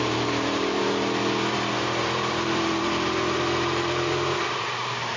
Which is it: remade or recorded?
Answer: remade